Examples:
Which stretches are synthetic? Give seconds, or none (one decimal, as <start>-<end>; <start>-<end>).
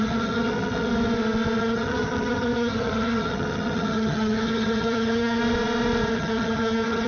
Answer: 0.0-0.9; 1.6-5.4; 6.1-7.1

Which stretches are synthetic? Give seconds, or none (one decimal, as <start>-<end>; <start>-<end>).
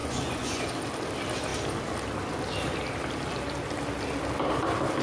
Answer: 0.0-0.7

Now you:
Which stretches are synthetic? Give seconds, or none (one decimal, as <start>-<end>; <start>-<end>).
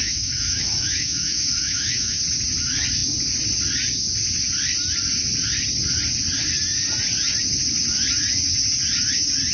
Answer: 0.0-2.2